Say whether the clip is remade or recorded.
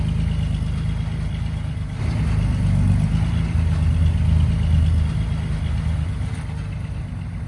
recorded